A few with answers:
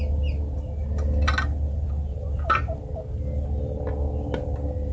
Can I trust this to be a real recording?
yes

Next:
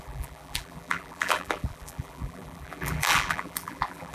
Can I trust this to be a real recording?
no